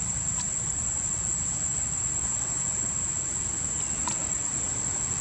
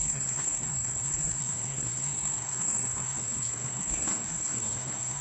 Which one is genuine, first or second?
first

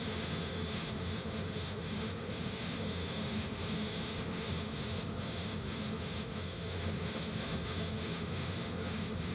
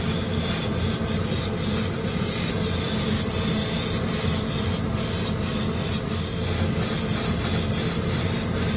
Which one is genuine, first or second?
second